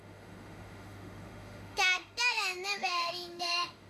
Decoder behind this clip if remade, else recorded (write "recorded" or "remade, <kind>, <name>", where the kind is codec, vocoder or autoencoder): remade, autoencoder, DAC-VAE